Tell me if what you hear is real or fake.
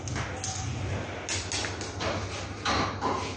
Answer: real